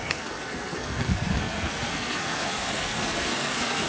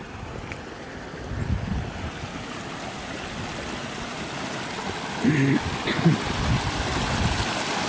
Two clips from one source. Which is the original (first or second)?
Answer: second